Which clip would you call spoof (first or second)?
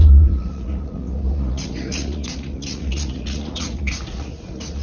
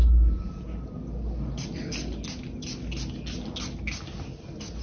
first